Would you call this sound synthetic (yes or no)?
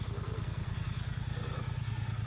yes